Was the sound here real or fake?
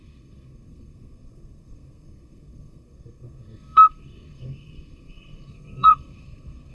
fake